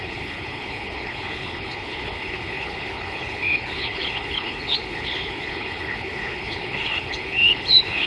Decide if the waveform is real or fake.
fake